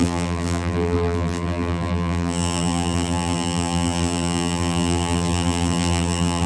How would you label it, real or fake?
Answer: fake